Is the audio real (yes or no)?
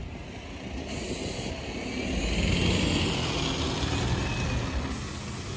yes